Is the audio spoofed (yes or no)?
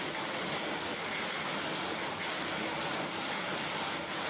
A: no